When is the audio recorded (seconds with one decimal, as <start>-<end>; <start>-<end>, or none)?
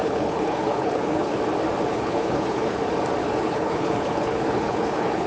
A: 1.4-1.9; 2.8-3.2